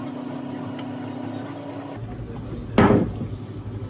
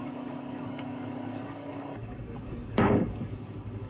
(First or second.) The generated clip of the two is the second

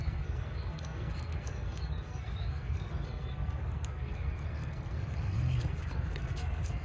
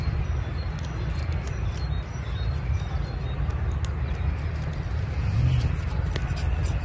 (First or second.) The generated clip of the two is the first